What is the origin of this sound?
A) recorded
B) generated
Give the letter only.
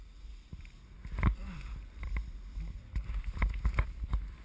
A